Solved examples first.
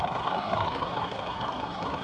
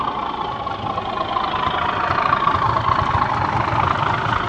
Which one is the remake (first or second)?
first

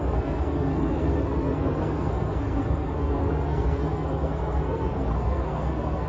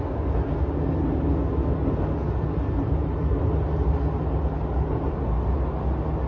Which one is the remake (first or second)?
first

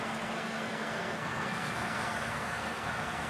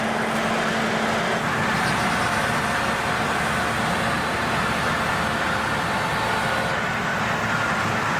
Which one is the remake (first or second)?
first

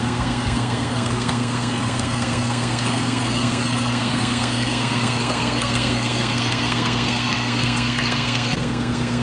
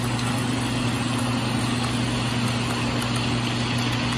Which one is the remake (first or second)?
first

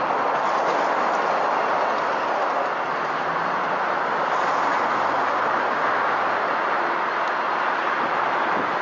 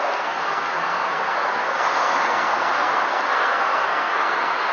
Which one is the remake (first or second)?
second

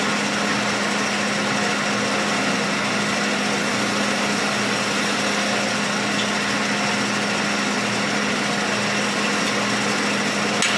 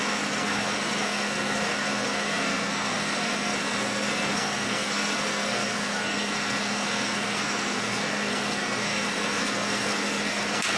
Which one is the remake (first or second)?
second